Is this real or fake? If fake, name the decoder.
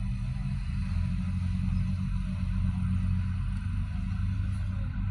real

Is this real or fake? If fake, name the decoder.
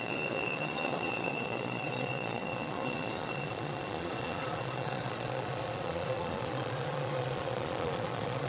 fake, vocoder, Vocos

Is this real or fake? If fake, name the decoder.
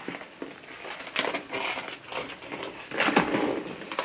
real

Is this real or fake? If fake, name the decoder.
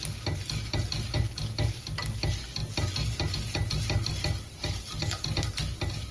real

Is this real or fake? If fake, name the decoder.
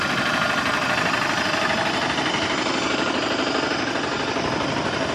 real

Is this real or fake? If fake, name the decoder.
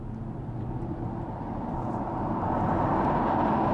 real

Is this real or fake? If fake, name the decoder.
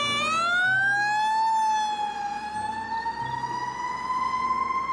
real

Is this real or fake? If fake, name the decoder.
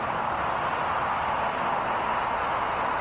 real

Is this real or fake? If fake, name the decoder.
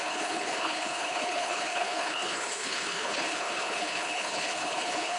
fake, codec, HILCodec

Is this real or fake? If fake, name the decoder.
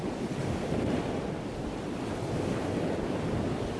real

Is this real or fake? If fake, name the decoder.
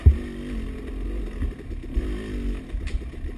real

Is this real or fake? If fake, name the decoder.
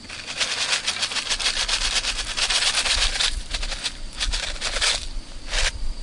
real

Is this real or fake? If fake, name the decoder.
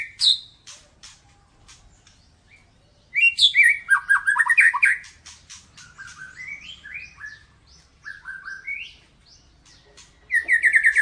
real